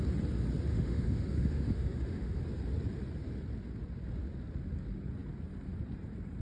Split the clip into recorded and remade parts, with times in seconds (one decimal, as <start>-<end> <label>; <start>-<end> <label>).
0.0-0.7 recorded; 0.7-2.4 remade; 2.4-6.4 recorded